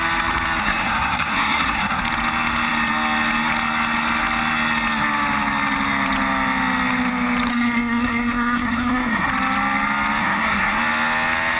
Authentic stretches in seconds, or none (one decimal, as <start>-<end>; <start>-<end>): 0.0-0.6; 2.0-7.5; 9.3-10.2; 10.8-11.6